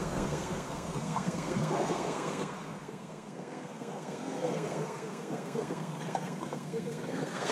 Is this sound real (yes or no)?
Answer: no